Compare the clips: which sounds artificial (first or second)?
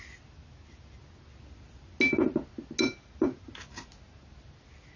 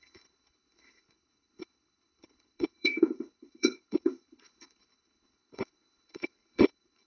second